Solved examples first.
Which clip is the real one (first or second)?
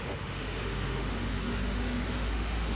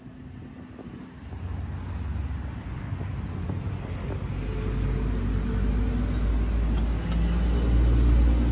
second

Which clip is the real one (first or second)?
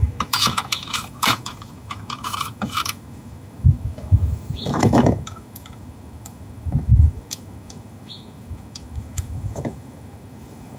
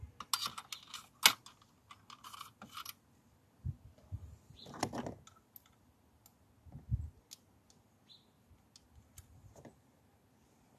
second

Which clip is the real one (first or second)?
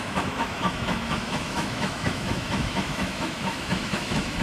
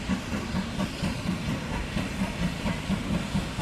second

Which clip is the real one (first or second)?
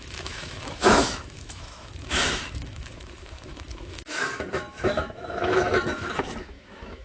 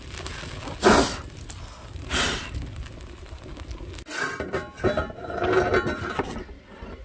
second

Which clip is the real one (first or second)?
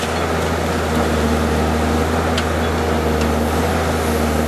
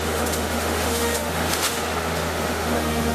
first